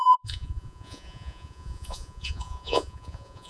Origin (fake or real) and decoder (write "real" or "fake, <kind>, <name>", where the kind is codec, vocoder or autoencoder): fake, vocoder, Vocos